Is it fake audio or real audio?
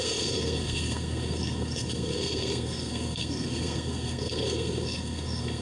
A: fake